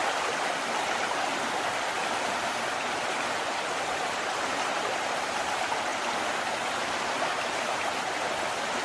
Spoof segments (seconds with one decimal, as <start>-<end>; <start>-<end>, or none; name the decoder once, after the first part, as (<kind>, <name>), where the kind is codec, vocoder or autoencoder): none